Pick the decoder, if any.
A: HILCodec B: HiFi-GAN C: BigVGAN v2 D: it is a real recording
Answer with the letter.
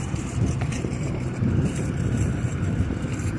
C